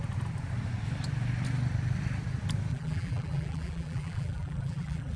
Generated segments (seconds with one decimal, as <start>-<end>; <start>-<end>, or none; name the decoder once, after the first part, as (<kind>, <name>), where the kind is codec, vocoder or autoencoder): 2.7-5.2 (vocoder, BigVGAN v2)